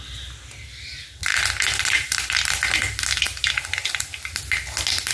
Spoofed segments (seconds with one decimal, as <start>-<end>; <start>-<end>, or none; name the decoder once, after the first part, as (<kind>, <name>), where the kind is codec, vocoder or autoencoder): none